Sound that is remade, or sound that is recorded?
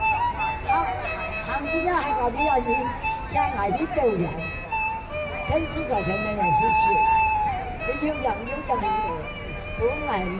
recorded